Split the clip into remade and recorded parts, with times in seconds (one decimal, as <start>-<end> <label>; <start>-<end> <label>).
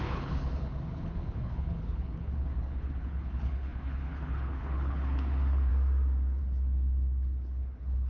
0.0-5.7 remade; 5.7-6.4 recorded; 6.4-8.1 remade